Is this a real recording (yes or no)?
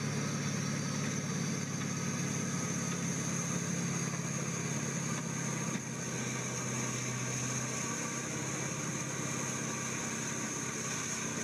yes